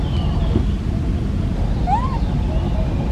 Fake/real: real